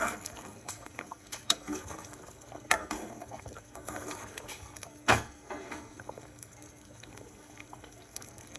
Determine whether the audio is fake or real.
fake